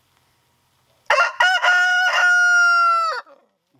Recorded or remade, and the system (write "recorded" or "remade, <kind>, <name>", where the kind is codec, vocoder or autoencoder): recorded